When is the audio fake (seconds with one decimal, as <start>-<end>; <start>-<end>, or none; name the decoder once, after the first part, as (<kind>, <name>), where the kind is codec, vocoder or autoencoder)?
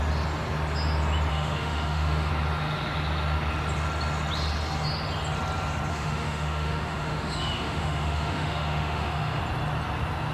1.3-2.3 (autoencoder, DAC-VAE); 5.9-9.4